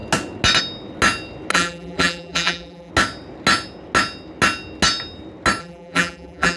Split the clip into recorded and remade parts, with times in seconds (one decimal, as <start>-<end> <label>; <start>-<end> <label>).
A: 0.0-1.5 recorded; 1.5-2.9 remade; 2.9-5.6 recorded; 5.6-6.6 remade